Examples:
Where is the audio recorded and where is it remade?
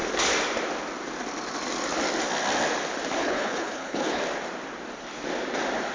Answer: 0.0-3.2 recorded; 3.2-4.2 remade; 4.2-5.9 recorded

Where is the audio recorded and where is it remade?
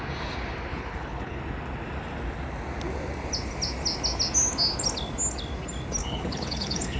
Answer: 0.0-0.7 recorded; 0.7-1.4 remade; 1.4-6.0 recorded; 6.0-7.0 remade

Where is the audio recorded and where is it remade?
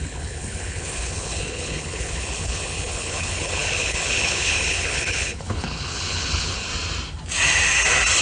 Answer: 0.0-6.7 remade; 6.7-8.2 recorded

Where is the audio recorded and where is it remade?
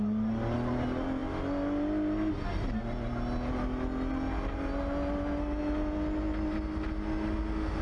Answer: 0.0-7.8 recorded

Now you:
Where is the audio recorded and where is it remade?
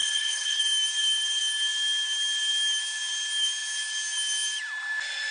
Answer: 0.0-0.6 remade; 0.6-5.3 recorded